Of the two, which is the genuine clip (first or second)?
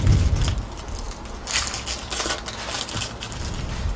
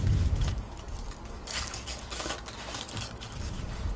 first